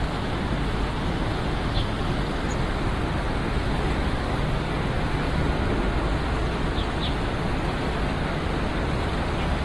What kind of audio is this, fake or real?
real